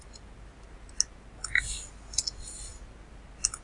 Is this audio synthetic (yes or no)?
no